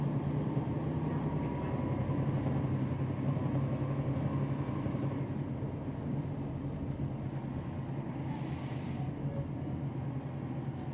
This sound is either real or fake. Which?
real